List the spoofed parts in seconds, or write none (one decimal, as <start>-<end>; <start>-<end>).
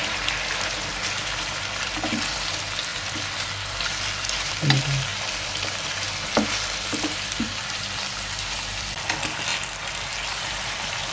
0.0-1.0; 2.9-4.5; 5.1-9.1